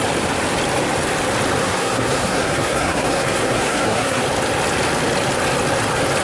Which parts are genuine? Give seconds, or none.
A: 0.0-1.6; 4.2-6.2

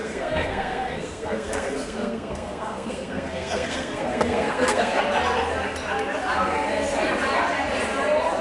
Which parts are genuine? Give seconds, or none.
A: 5.0-8.4